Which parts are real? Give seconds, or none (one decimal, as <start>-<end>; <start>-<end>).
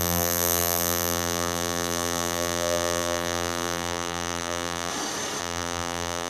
4.9-5.4